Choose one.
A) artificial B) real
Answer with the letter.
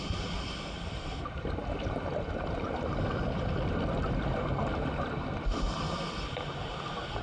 B